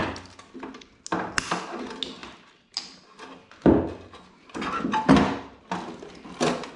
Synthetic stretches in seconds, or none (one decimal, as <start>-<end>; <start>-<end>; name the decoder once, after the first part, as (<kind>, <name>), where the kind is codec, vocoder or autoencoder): none

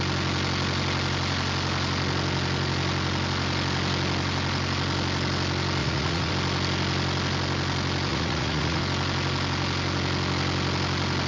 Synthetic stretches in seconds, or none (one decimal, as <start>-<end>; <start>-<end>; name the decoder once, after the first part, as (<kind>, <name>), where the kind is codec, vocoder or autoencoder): 5.8-6.3 (vocoder, Vocos); 8.1-8.8

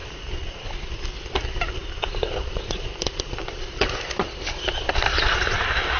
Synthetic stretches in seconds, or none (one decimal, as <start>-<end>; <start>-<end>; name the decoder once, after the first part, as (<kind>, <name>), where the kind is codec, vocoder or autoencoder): 0.7-6.0 (vocoder, BigVGAN v2)

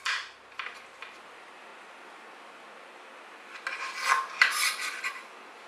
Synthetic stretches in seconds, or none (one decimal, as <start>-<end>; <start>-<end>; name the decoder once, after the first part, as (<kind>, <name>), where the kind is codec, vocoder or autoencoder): none

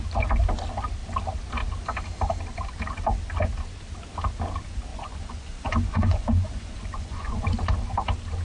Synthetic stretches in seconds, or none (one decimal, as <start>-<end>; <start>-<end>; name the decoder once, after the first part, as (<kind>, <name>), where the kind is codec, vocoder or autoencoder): 4.9-7.4 (vocoder, Vocos)

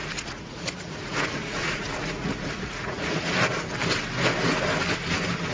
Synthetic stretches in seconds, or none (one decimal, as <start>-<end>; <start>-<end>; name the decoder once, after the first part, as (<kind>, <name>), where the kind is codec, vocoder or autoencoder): 0.0-3.3 (vocoder, Vocos)

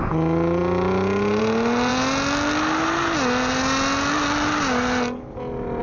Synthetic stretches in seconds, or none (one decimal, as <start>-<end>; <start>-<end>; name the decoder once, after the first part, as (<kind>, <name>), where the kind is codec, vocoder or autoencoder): none